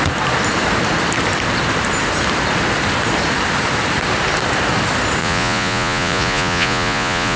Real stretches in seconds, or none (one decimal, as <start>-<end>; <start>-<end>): 0.0-5.2